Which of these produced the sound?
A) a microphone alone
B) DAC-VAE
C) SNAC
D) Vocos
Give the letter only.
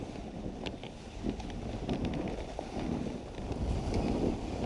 A